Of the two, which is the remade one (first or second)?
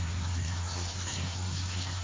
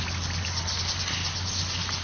first